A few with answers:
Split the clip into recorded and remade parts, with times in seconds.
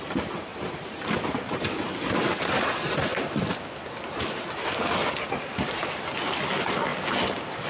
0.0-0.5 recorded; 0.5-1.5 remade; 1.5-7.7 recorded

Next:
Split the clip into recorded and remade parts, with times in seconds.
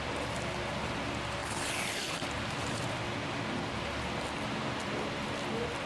0.0-5.9 recorded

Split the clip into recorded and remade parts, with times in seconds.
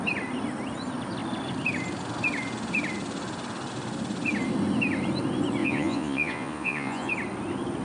0.0-5.6 recorded; 5.6-7.1 remade; 7.1-7.8 recorded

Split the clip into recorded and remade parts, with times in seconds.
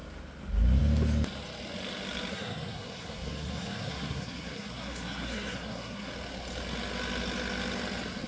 0.0-2.3 recorded; 2.3-6.1 remade; 6.1-8.3 recorded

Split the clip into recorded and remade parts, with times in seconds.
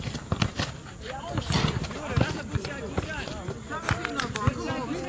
0.0-5.1 recorded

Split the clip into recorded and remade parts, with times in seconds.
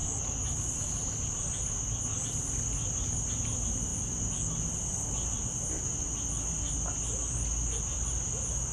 0.0-8.7 recorded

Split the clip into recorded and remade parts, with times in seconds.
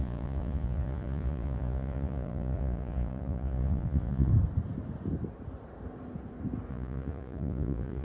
0.0-4.3 remade; 4.3-6.7 recorded; 6.7-8.0 remade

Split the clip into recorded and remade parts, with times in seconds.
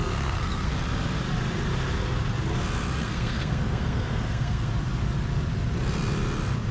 0.0-0.7 remade; 0.7-3.0 recorded; 3.0-4.7 remade; 4.7-6.7 recorded